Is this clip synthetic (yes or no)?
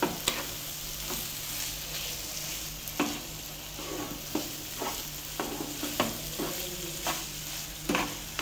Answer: no